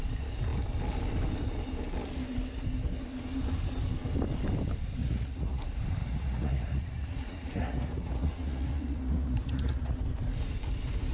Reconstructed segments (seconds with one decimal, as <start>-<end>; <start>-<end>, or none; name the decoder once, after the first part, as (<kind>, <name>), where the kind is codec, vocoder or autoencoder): 5.0-5.6 (vocoder, Vocos); 6.0-10.0